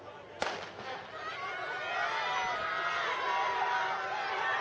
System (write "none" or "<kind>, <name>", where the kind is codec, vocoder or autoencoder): none